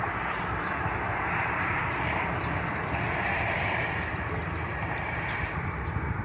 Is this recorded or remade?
remade